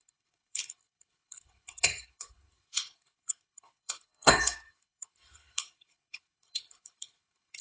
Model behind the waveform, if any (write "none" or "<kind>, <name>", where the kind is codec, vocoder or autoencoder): codec, HILCodec